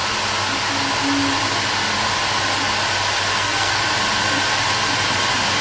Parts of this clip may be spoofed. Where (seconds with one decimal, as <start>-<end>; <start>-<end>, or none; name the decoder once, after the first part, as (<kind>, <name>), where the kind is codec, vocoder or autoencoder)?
3.3-3.8 (codec, SNAC)